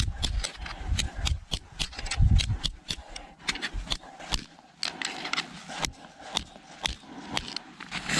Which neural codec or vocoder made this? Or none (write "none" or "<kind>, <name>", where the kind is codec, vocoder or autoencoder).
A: none